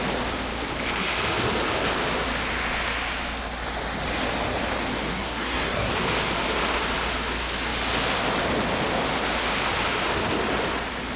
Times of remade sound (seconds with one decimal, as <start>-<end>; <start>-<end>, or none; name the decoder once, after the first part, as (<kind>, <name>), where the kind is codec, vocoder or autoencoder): 5.1-5.9 (codec, SNAC)